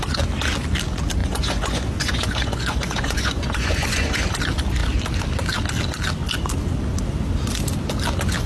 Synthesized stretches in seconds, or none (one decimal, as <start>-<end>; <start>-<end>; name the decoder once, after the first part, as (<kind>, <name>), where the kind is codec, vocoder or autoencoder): 1.2-4.2 (vocoder, Vocos)